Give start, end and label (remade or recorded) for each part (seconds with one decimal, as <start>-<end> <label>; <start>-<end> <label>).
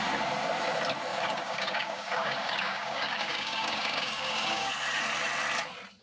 0.0-1.1 recorded; 1.1-4.7 remade; 4.7-6.0 recorded